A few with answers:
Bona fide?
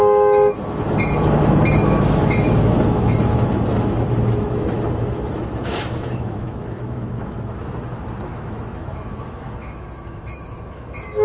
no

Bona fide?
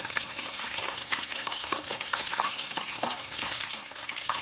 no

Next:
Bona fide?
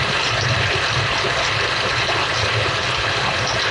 yes